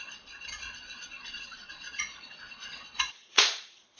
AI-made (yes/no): yes